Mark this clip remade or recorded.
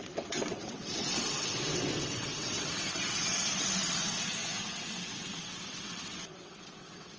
remade